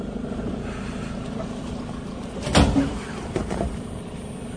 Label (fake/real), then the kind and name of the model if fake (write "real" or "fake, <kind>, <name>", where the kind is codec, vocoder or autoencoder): fake, vocoder, BigVGAN v2